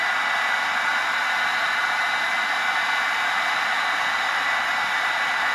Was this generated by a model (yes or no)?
no